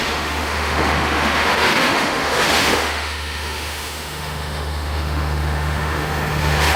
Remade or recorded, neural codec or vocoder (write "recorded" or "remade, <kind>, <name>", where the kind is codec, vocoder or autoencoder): remade, autoencoder, DAC-VAE